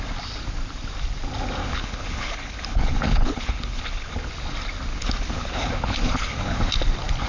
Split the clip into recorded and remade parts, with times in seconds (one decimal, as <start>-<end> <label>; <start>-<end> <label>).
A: 0.0-1.6 recorded; 1.6-4.3 remade; 4.3-4.9 recorded; 4.9-6.7 remade; 6.7-7.3 recorded